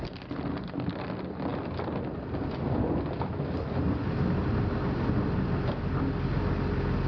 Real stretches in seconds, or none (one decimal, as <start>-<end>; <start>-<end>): 0.0-7.1